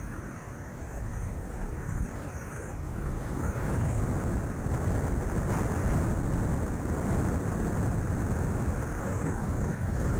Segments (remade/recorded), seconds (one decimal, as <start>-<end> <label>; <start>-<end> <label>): 0.0-4.0 remade; 4.0-9.0 recorded; 9.0-10.2 remade